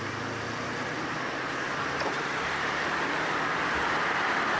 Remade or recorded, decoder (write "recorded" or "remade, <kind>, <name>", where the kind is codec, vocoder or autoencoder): recorded